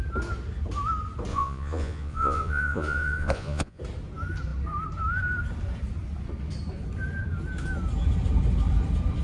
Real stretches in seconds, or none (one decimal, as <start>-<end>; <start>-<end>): 0.0-1.3; 3.8-9.2